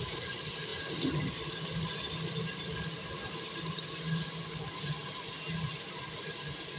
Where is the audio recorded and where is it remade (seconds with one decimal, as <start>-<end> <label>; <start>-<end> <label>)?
0.0-6.8 recorded